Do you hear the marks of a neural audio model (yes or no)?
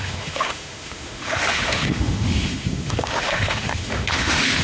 yes